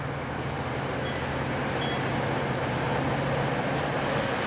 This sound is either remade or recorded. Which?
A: recorded